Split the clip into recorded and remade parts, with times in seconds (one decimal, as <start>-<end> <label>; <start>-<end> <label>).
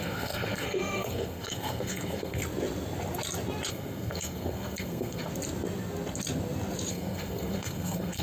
0.0-2.4 remade; 2.4-3.7 recorded; 3.7-5.3 remade; 5.3-6.9 recorded; 6.9-8.2 remade